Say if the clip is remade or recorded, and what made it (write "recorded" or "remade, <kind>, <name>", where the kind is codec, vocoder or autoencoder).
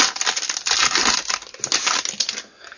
recorded